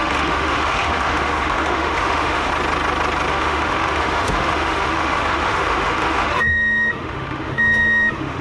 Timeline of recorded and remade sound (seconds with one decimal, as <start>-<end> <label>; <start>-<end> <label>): 0.0-2.5 remade; 2.5-3.3 recorded; 3.3-8.4 remade